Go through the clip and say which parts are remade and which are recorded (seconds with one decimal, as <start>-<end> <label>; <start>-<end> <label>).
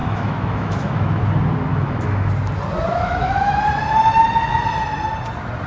0.0-1.2 remade; 1.2-1.7 recorded; 1.7-2.3 remade; 2.3-2.9 recorded; 2.9-3.6 remade; 3.6-5.7 recorded